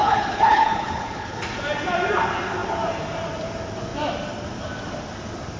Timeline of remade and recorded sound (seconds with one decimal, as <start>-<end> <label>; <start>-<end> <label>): 0.0-1.4 remade; 1.4-5.6 recorded